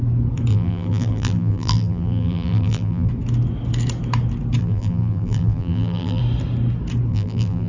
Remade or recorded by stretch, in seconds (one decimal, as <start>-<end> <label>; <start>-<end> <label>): 0.0-0.5 recorded; 0.5-3.1 remade; 3.1-4.6 recorded; 4.6-6.2 remade; 6.2-7.1 recorded; 7.1-7.7 remade